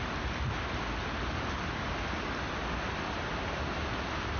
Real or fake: real